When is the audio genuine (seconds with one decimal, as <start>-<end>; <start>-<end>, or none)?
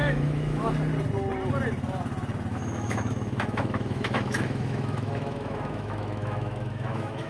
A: 0.7-2.5